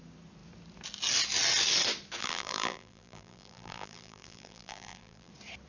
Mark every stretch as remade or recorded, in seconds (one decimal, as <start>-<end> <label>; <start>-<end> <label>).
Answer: 0.0-2.2 recorded; 2.2-5.3 remade; 5.3-5.7 recorded